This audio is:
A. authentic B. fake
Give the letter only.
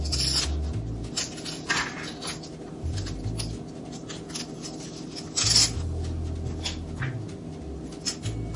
A